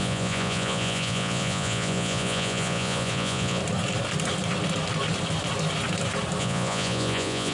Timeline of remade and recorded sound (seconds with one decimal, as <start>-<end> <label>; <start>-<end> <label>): 0.0-3.6 remade; 3.6-6.4 recorded; 6.4-7.5 remade